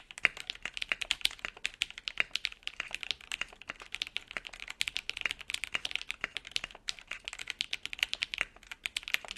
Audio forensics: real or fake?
real